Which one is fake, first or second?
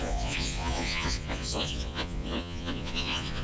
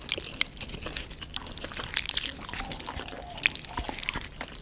first